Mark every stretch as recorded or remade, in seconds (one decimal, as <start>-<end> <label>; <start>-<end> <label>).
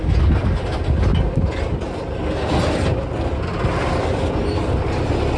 0.0-5.4 recorded